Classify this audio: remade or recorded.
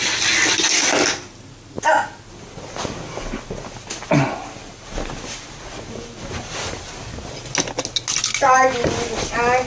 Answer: recorded